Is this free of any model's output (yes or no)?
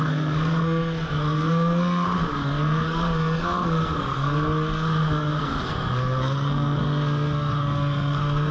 no